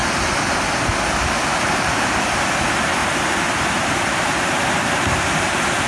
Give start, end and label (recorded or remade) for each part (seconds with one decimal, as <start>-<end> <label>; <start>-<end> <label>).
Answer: 0.0-1.5 recorded; 1.5-2.1 remade; 2.1-3.0 recorded; 3.0-5.9 remade